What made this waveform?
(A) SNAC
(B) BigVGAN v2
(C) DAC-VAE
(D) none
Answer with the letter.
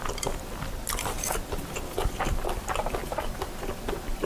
D